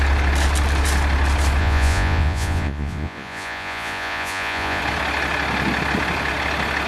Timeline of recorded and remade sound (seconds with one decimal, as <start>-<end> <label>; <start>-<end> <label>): 0.0-1.6 recorded; 1.6-4.8 remade; 4.8-6.9 recorded